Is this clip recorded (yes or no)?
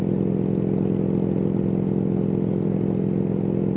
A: yes